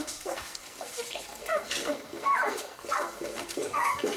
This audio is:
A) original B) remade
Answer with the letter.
B